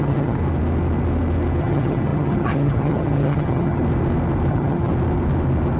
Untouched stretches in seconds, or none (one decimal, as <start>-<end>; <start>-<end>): 0.4-1.6; 3.8-4.5; 4.9-5.8

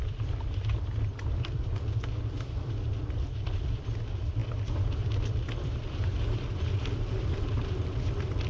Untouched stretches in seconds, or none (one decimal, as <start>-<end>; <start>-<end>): none

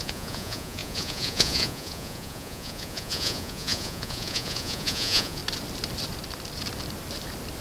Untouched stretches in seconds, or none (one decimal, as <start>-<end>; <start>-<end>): 5.4-7.6

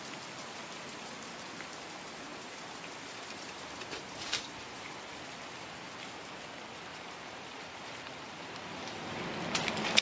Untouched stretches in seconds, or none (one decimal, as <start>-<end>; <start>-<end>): 0.0-2.3; 4.9-6.9; 9.2-10.0

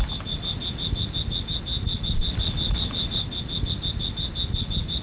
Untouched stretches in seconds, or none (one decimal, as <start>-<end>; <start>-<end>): 0.0-5.0

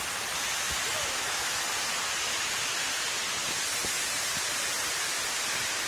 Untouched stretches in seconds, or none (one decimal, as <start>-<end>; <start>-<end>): 0.0-0.9; 1.6-5.9

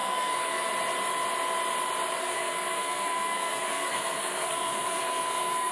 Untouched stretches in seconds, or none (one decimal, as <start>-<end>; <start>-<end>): 0.7-2.2

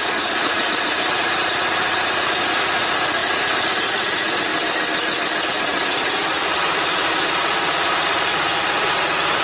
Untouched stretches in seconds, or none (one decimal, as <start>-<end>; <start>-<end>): 4.5-5.5